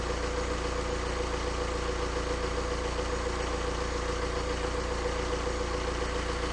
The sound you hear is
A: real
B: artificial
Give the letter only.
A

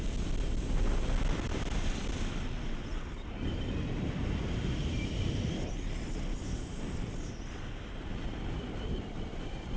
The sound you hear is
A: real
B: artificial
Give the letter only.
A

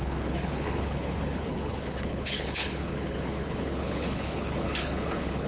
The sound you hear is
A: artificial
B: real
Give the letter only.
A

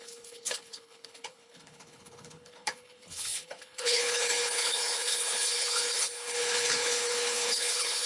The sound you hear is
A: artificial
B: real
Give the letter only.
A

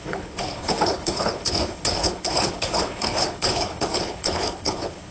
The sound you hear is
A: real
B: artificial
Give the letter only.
B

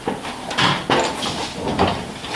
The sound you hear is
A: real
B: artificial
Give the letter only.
A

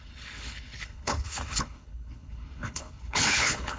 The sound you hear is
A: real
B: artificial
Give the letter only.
B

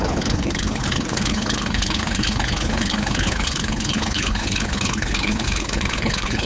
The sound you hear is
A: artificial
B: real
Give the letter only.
A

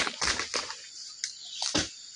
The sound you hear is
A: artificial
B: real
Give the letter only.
B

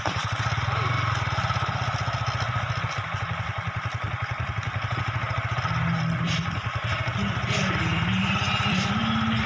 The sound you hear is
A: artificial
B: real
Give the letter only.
B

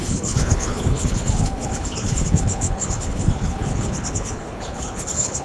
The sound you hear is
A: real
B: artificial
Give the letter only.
B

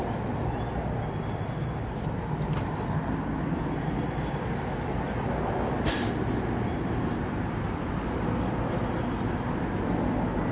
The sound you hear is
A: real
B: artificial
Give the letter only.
A